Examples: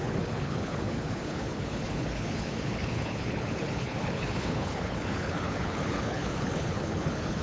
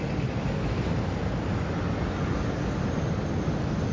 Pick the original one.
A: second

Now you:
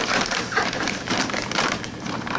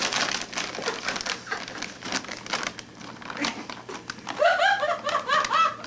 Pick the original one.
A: second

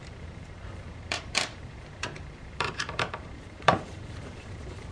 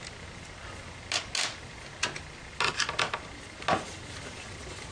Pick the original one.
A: second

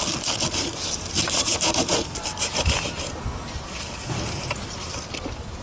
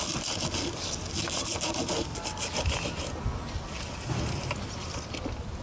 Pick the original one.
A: second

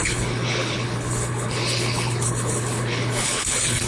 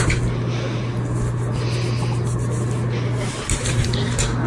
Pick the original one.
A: second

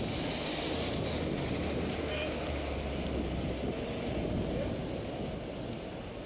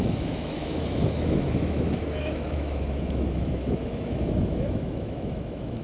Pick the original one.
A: first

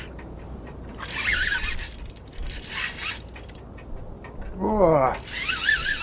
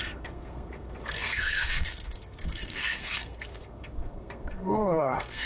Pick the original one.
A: first